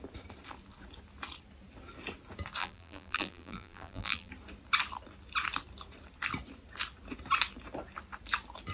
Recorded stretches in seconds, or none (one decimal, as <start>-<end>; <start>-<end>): 0.0-2.6; 4.3-8.7